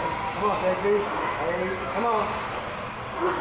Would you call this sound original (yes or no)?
yes